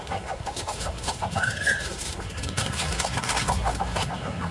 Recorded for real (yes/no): no